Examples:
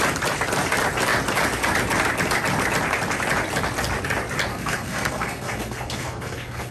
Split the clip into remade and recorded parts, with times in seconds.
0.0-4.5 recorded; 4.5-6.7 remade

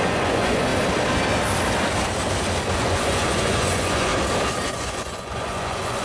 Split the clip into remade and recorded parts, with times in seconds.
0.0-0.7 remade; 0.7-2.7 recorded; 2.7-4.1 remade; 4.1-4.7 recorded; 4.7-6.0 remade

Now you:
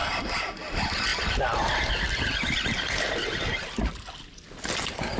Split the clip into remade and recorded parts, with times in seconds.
0.0-5.2 recorded